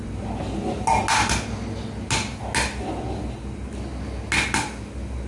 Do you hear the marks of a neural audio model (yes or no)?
no